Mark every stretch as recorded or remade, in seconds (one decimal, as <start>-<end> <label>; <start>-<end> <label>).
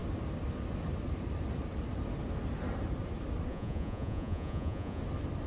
0.0-3.5 recorded; 3.5-5.0 remade; 5.0-5.5 recorded